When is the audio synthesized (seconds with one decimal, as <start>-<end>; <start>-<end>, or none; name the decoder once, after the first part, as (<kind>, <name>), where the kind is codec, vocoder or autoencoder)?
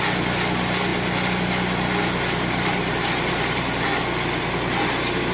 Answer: none